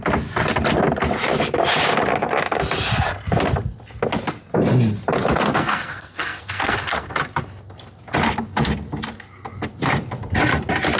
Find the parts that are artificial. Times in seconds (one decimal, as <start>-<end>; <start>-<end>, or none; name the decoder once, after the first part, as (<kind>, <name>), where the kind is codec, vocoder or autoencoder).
5.3-7.1 (codec, SNAC)